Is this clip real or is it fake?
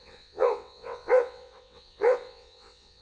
fake